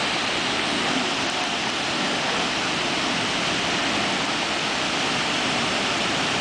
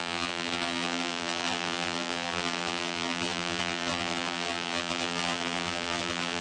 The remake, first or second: second